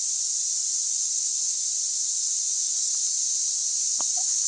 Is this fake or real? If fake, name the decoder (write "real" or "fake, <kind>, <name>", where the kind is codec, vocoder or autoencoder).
fake, vocoder, Vocos